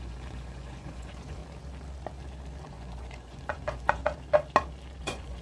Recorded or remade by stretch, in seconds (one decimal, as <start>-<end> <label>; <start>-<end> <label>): 0.0-1.4 remade; 1.4-2.6 recorded; 2.6-4.0 remade; 4.0-5.0 recorded; 5.0-5.4 remade